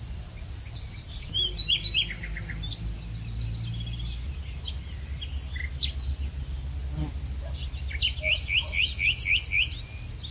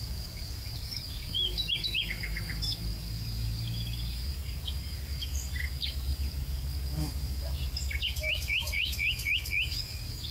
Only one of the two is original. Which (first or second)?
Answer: first